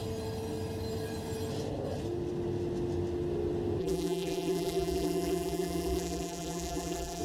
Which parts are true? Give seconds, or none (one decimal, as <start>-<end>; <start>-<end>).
0.0-3.8